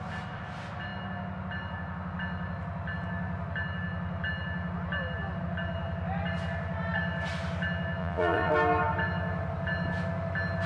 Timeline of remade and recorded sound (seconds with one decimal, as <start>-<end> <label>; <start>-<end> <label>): 0.0-8.0 recorded; 8.0-8.5 remade; 8.5-10.7 recorded